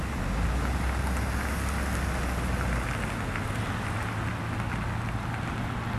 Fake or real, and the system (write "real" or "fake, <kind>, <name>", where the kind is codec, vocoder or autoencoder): real